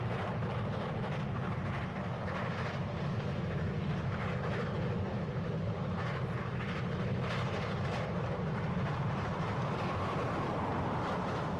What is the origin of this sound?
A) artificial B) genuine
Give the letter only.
A